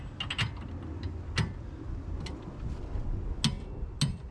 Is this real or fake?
real